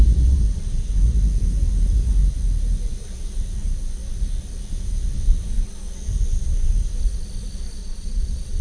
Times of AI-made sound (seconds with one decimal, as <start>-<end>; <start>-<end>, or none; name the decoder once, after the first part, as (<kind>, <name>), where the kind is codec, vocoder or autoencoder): 7.8-8.6 (vocoder, Vocos)